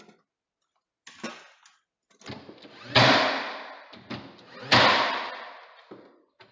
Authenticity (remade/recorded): recorded